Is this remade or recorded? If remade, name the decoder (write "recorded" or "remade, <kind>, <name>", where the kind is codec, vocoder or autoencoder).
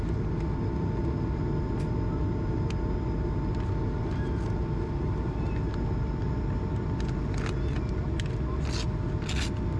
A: recorded